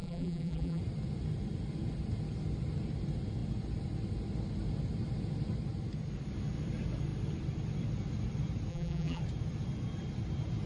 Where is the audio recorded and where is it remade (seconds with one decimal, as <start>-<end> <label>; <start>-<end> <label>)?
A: 0.0-0.8 remade; 0.8-8.7 recorded; 8.7-9.2 remade; 9.2-10.7 recorded